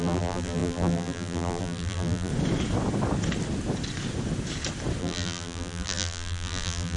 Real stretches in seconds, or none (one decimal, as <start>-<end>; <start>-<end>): 2.3-5.0